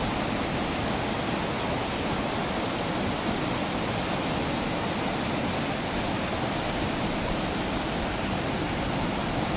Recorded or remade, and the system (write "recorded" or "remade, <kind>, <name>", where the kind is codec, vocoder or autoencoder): recorded